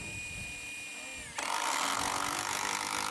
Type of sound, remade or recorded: recorded